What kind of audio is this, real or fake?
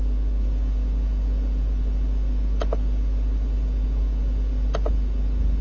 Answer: real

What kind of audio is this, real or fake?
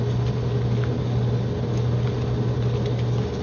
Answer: real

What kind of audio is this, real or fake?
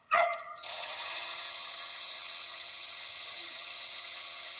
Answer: fake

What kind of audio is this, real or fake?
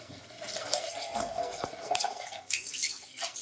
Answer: fake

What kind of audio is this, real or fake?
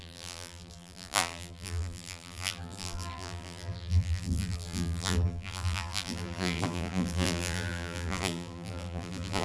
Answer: fake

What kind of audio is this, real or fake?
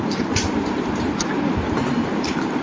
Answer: fake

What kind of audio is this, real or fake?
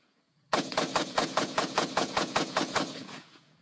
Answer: fake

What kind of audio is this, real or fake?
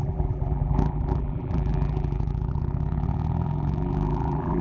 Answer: fake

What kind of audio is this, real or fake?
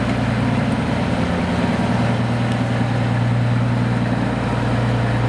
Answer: real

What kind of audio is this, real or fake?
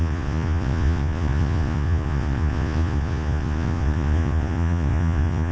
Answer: fake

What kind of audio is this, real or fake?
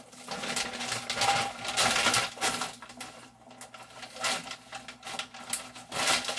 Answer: real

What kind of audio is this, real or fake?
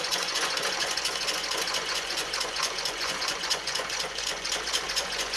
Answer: fake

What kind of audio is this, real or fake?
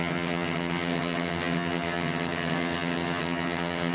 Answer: fake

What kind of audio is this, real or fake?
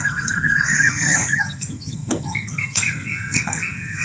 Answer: fake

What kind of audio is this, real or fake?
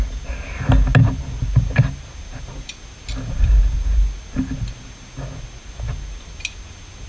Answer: real